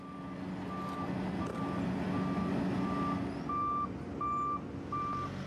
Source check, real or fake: real